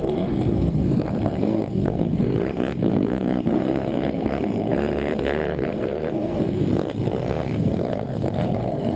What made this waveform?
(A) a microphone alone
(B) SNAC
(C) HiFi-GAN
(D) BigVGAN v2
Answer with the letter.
B